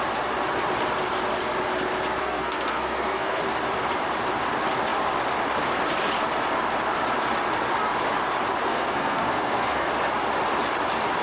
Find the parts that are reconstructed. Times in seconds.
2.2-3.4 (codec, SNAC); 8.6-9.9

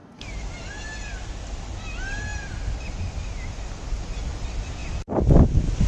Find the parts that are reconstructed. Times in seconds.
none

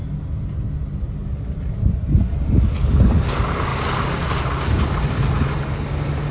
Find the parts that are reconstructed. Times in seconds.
none

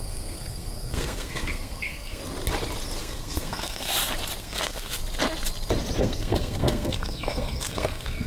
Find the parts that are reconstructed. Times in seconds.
0.0-2.2 (codec, SNAC); 3.0-3.9; 4.4-5.0; 6.0-8.3

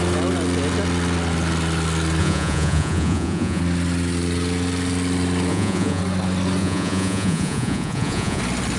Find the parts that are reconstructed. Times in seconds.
2.2-3.6 (vocoder, Vocos); 5.5-6.0; 6.6-8.4